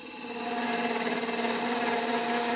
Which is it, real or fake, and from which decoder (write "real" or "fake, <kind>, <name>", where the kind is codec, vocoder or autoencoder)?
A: real